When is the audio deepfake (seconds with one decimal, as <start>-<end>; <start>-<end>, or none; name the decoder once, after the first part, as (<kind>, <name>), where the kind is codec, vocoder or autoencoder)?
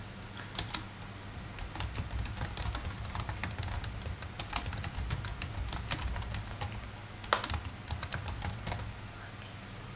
none